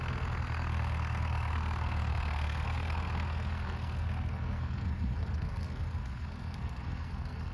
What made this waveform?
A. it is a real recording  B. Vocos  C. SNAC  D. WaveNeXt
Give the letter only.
C